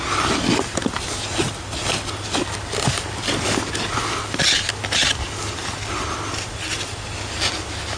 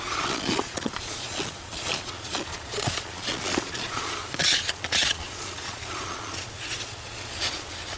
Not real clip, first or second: second